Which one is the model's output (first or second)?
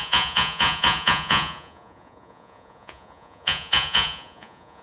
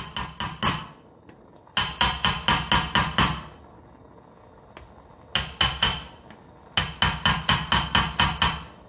first